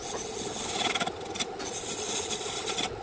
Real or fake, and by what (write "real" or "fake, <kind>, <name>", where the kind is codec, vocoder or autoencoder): real